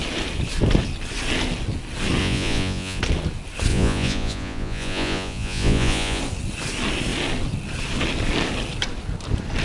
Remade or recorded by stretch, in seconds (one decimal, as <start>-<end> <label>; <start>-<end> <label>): 0.0-2.2 recorded; 2.2-3.0 remade; 3.0-3.7 recorded; 3.7-6.2 remade; 6.2-9.6 recorded